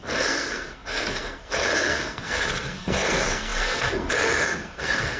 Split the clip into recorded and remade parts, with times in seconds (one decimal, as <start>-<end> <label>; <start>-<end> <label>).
0.0-5.2 remade